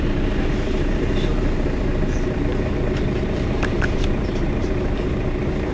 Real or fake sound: fake